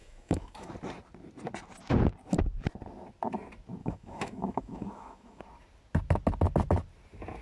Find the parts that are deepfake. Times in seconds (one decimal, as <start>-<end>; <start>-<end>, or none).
0.0-0.7; 3.8-5.4